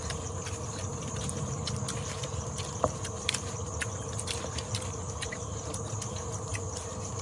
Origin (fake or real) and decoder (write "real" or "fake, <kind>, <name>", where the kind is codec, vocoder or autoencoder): real